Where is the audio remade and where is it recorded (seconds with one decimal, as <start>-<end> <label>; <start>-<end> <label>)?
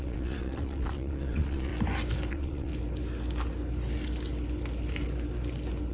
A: 0.0-1.7 remade; 1.7-2.3 recorded; 2.3-2.7 remade; 2.7-5.9 recorded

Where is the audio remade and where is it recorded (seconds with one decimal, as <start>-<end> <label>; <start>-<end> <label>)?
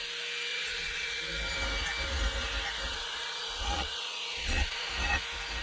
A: 0.0-0.5 recorded; 0.5-1.2 remade; 1.2-2.9 recorded; 2.9-4.9 remade; 4.9-5.6 recorded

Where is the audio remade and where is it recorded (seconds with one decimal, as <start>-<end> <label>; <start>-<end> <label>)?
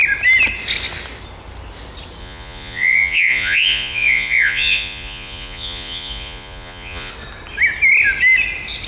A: 0.0-2.2 recorded; 2.2-7.1 remade; 7.1-8.9 recorded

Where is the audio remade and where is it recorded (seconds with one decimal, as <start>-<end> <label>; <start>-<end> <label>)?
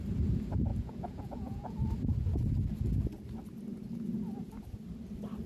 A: 0.0-0.7 recorded; 0.7-1.7 remade; 1.7-5.5 recorded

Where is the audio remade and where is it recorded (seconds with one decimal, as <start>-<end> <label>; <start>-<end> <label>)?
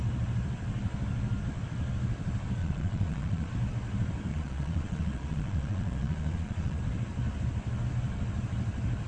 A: 0.0-2.6 recorded; 2.6-3.5 remade; 3.5-4.3 recorded; 4.3-6.8 remade; 6.8-9.1 recorded